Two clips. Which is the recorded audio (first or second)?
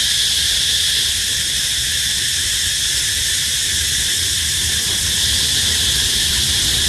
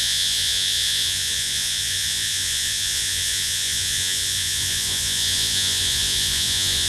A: first